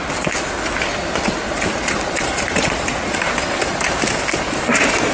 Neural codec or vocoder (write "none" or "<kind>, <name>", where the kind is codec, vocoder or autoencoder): none